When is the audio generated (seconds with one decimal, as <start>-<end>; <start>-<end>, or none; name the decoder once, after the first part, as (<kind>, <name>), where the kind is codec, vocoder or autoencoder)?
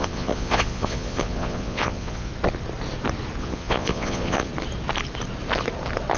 0.0-2.3 (vocoder, Vocos); 3.4-4.5